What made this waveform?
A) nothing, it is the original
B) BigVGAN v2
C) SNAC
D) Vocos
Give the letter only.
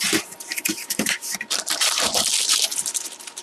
B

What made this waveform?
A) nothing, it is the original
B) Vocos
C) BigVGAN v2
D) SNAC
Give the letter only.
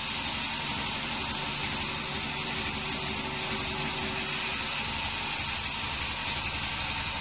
A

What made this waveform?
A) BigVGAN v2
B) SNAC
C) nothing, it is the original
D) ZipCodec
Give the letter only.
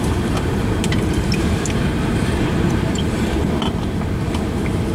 A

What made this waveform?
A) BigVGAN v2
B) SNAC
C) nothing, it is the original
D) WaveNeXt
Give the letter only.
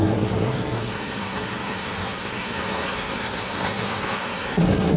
B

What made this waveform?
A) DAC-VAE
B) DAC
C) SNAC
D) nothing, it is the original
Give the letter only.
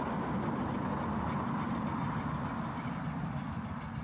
D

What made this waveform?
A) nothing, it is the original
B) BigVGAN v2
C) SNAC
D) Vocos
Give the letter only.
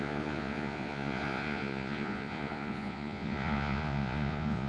D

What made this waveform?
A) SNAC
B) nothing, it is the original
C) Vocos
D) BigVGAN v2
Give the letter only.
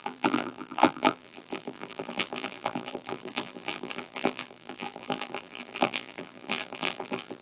D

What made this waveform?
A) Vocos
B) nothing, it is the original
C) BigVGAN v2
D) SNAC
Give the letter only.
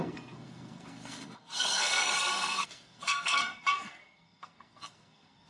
D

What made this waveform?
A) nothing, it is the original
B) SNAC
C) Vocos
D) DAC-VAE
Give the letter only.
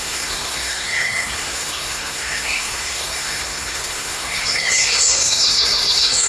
B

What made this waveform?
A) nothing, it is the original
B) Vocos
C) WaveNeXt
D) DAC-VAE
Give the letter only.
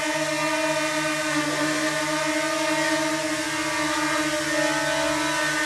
A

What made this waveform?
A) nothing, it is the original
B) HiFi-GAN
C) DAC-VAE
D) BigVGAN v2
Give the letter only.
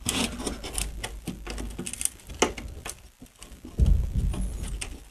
A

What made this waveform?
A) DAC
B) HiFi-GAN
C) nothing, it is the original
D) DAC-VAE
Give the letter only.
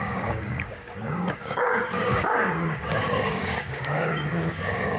A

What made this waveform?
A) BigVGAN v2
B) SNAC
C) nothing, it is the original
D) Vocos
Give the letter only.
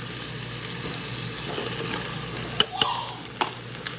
C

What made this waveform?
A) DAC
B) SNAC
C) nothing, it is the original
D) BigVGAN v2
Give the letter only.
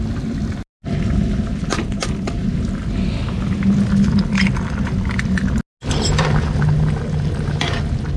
C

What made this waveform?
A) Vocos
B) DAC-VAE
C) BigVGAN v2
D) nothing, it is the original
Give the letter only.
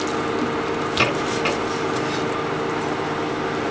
D